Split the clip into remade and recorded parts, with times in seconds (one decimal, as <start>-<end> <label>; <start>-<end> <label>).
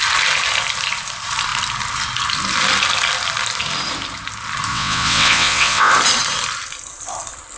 0.0-4.7 recorded; 4.7-5.9 remade; 5.9-7.6 recorded